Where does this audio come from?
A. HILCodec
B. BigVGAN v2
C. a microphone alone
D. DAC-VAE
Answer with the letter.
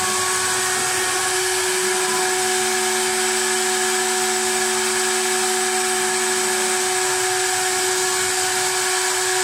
C